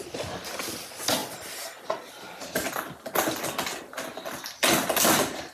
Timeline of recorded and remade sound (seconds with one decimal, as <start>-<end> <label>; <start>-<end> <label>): 0.0-5.5 recorded